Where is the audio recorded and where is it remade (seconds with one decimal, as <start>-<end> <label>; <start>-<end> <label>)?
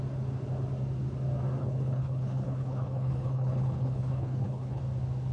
0.0-1.6 recorded; 1.6-4.8 remade; 4.8-5.3 recorded